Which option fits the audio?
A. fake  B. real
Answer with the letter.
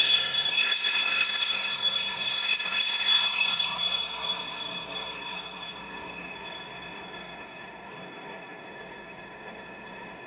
A